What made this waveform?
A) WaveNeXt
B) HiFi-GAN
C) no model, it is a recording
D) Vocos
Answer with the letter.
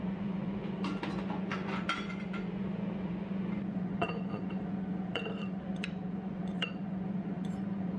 D